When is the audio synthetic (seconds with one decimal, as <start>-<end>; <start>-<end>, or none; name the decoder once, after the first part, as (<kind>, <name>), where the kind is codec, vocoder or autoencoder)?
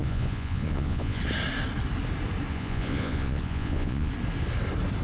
0.0-1.2 (vocoder, Vocos); 2.5-4.1